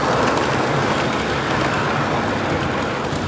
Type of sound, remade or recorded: recorded